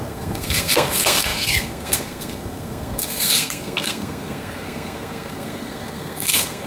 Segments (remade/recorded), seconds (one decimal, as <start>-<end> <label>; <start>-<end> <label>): 0.0-6.7 remade